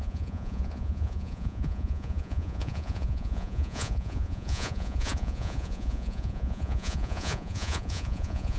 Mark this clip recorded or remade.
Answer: remade